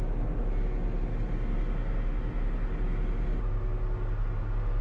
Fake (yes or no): no